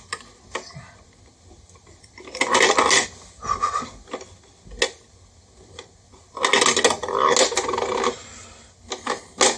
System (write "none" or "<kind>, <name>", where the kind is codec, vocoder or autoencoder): none